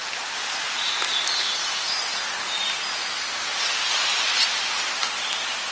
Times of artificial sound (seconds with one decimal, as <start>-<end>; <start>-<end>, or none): none

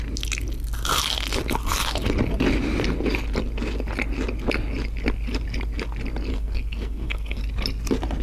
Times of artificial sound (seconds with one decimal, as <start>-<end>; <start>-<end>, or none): 6.3-7.4

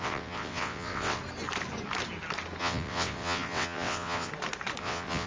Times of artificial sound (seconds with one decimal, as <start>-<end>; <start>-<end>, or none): 0.0-1.2; 2.6-4.3; 4.8-5.3